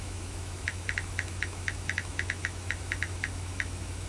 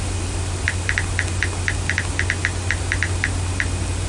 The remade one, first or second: first